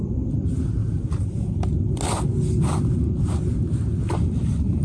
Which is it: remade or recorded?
recorded